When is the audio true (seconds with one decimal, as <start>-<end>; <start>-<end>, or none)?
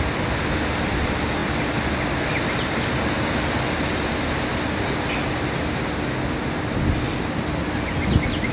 0.0-8.5